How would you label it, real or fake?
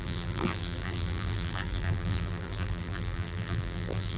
fake